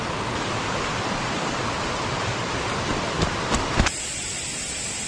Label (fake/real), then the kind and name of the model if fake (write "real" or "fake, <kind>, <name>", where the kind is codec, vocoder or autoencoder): real